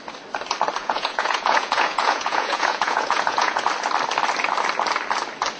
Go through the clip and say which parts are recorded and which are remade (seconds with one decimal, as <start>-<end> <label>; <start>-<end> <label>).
0.0-0.8 recorded; 0.8-3.7 remade; 3.7-5.6 recorded